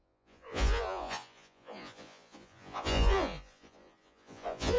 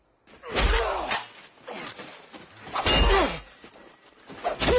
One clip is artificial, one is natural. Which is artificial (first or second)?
first